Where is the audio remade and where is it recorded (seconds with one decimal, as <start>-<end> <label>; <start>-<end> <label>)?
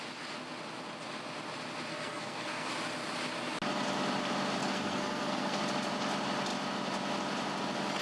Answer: 0.0-1.9 recorded; 1.9-2.7 remade; 2.7-4.6 recorded; 4.6-5.6 remade; 5.6-8.0 recorded